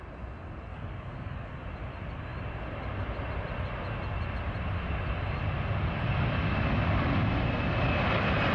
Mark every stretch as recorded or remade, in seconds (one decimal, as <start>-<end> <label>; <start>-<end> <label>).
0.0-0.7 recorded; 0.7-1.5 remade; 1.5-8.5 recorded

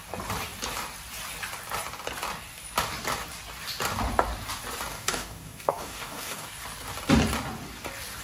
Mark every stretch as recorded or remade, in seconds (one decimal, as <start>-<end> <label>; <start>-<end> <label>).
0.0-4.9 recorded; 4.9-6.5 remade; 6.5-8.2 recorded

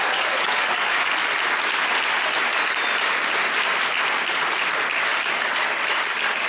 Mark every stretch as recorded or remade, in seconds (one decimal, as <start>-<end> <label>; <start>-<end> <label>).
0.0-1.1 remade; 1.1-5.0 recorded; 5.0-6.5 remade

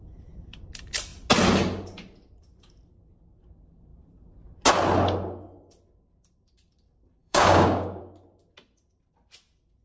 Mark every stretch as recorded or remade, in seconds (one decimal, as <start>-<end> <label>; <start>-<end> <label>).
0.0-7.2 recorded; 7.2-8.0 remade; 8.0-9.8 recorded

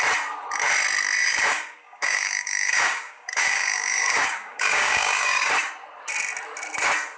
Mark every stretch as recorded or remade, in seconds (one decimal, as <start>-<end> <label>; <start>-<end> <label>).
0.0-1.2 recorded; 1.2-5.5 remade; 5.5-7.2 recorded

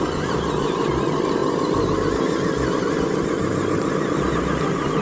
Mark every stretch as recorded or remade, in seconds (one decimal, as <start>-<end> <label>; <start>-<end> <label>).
0.0-5.0 recorded